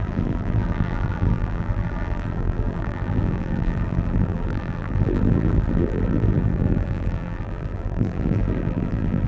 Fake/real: fake